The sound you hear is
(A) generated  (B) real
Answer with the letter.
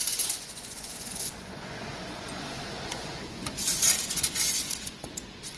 A